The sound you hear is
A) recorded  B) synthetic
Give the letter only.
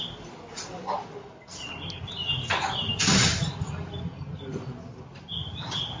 A